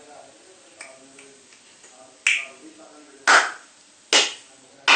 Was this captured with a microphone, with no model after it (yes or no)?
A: yes